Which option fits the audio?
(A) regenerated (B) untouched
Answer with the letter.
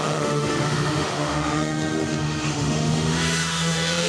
A